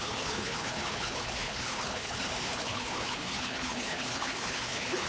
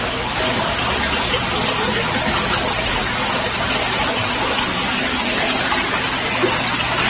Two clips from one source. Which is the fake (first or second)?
first